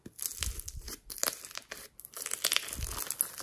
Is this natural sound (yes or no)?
yes